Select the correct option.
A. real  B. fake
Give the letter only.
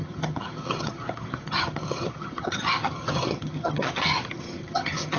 B